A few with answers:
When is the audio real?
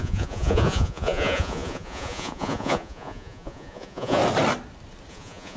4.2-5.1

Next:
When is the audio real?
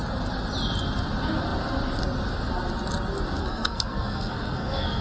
0.0-3.4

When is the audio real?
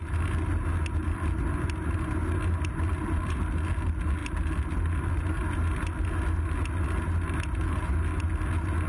0.0-8.9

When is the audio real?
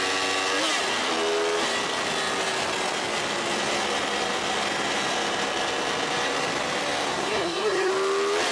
0.0-7.1; 7.9-8.5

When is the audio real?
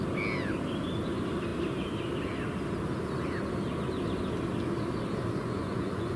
0.0-5.4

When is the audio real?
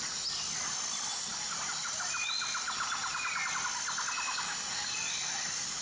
0.0-5.8